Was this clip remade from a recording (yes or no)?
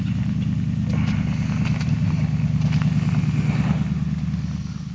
no